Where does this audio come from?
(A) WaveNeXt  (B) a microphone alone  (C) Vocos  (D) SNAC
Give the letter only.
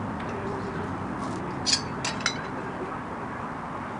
B